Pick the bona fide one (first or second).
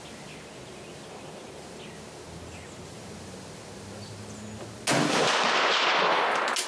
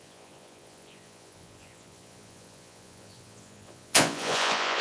first